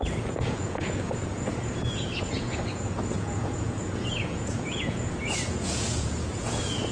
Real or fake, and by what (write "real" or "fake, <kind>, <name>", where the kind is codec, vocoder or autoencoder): fake, vocoder, Vocos